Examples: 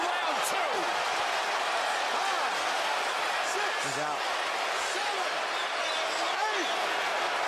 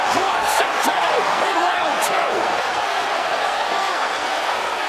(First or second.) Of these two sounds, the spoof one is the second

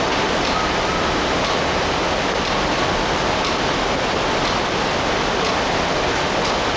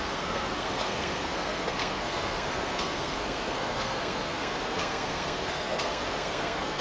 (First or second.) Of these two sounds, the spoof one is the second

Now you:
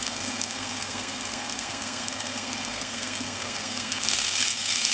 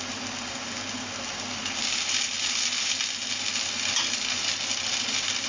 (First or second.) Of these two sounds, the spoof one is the first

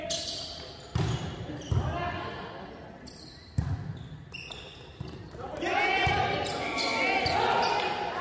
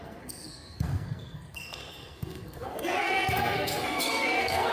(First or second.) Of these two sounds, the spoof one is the second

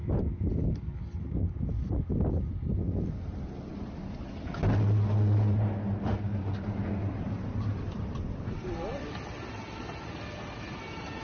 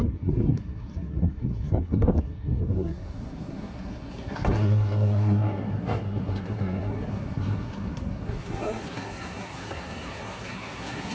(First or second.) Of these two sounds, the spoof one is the second